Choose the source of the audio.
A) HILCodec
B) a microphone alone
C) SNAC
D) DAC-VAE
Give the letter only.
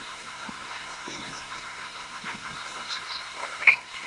C